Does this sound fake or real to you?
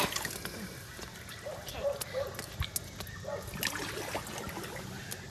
real